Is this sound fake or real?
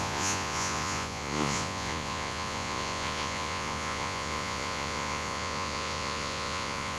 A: fake